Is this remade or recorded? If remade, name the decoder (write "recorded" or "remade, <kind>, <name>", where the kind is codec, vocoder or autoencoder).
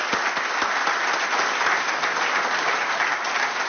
recorded